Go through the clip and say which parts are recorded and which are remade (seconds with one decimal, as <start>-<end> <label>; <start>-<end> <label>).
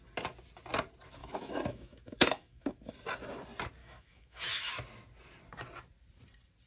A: 0.0-1.2 recorded; 1.2-2.7 remade; 2.7-3.8 recorded; 3.8-4.7 remade; 4.7-6.7 recorded